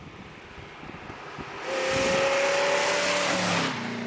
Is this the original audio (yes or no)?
yes